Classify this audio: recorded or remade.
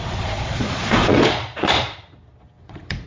remade